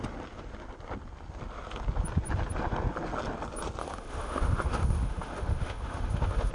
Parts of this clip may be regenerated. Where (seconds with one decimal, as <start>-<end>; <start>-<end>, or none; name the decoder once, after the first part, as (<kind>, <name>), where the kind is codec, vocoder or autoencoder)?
3.8-6.5 (autoencoder, DAC-VAE)